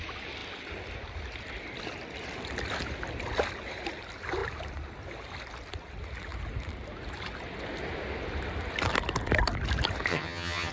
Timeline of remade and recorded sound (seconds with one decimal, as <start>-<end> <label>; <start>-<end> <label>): 0.0-10.1 recorded; 10.1-10.7 remade